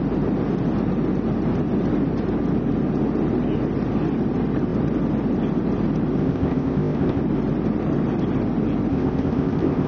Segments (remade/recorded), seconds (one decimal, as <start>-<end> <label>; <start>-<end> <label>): 0.0-6.2 recorded; 6.2-7.2 remade; 7.2-8.9 recorded; 8.9-9.9 remade

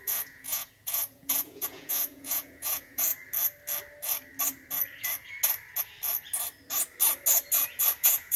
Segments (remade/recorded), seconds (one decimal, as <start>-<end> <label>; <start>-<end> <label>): 0.0-3.1 remade; 3.1-8.0 recorded; 8.0-8.4 remade

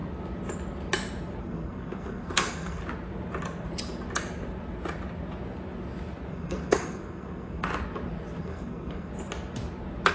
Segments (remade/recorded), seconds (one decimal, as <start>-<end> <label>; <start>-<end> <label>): 0.0-1.4 recorded; 1.4-2.8 remade; 2.8-6.3 recorded; 6.3-7.7 remade; 7.7-8.4 recorded; 8.4-9.1 remade; 9.1-10.1 recorded

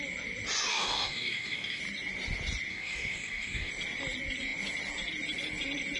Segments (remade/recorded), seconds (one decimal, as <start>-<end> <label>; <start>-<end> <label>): 0.0-0.7 recorded; 0.7-1.8 remade; 1.8-2.7 recorded; 2.7-3.7 remade; 3.7-6.0 recorded

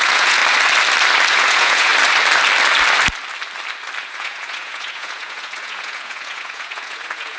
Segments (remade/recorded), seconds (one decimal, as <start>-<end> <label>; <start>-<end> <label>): 0.0-0.4 remade; 0.4-1.3 recorded; 1.3-1.9 remade; 1.9-4.0 recorded; 4.0-7.4 remade

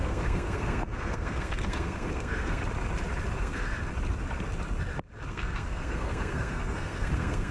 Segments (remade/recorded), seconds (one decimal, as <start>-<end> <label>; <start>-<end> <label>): 0.0-2.6 remade; 2.6-3.4 recorded; 3.4-3.8 remade; 3.8-5.3 recorded; 5.3-7.5 remade

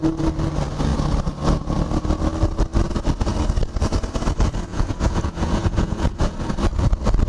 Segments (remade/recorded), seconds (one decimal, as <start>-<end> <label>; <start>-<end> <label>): 0.0-4.7 recorded; 4.7-6.5 remade; 6.5-7.3 recorded